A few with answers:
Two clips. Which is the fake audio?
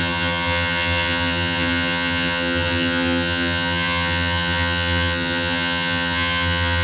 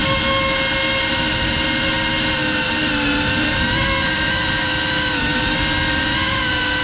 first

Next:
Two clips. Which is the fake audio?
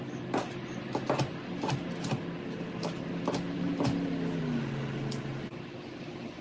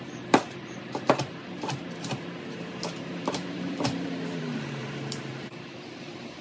second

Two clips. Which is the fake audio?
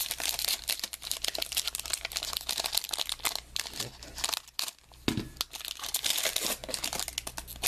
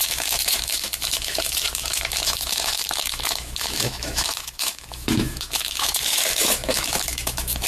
second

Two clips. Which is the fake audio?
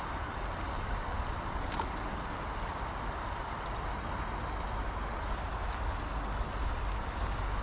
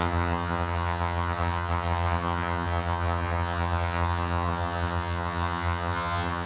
second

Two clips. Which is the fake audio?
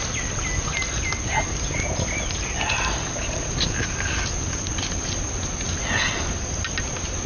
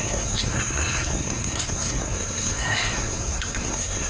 second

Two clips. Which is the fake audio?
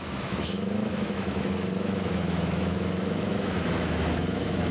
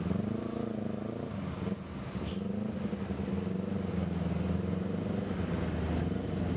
first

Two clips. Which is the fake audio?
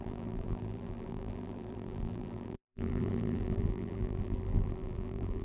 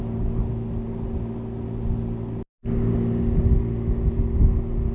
first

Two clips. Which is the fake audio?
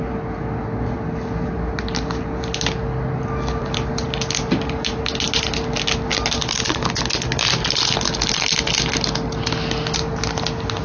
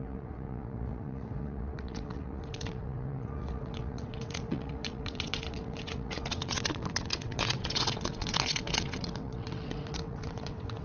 second